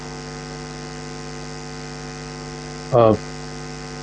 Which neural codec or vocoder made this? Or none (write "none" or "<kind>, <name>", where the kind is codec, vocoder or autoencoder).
none